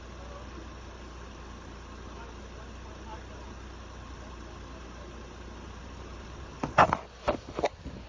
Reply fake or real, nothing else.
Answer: real